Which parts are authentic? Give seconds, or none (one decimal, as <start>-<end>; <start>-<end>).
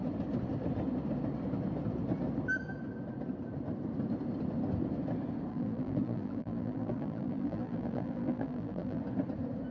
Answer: 0.0-5.5; 9.0-9.7